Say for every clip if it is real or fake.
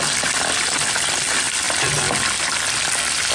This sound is real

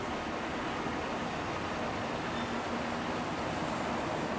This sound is real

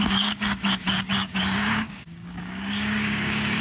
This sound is fake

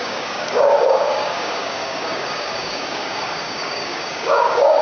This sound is fake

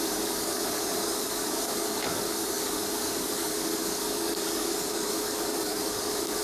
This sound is fake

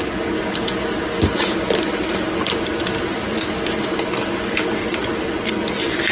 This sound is real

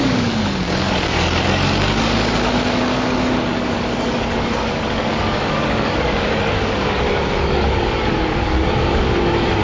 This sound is fake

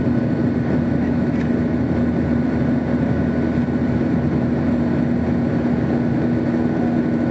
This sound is real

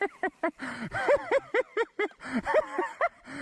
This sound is real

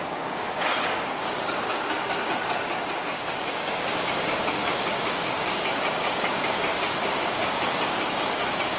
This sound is fake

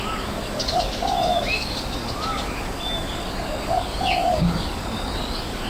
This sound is fake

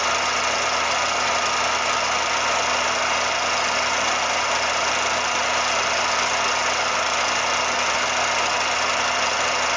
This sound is real